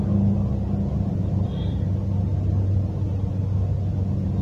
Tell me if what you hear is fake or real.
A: real